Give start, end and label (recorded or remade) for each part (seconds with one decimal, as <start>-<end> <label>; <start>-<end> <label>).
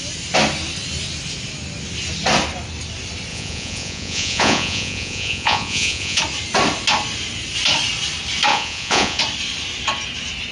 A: 0.0-3.3 recorded; 3.3-6.2 remade; 6.2-8.5 recorded; 8.5-9.2 remade; 9.2-10.5 recorded